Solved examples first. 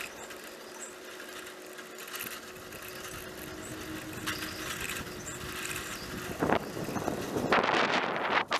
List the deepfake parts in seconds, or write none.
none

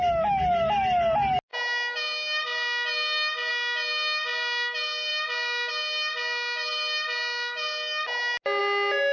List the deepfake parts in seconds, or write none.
none